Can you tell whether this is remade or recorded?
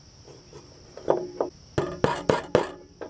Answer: recorded